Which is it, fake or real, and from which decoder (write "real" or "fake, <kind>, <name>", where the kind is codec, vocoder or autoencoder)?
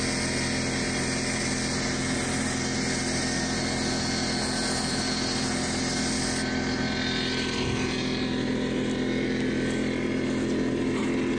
real